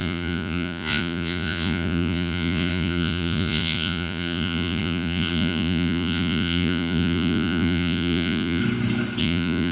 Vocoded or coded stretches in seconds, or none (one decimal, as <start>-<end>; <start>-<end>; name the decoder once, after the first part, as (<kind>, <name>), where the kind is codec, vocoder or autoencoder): 0.0-8.6 (vocoder, Vocos); 9.2-9.7